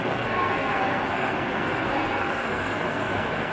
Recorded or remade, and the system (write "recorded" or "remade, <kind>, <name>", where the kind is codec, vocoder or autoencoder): remade, codec, SNAC